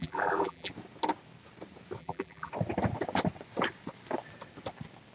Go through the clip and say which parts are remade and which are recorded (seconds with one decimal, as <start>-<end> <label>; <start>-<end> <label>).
0.0-0.7 remade; 0.7-2.0 recorded; 2.0-2.5 remade; 2.5-5.1 recorded